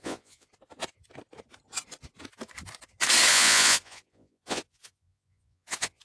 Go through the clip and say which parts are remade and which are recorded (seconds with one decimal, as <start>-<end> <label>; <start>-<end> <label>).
0.0-0.5 remade; 0.5-3.3 recorded; 3.3-6.0 remade